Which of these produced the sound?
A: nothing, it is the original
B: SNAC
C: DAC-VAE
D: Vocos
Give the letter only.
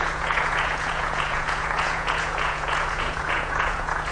D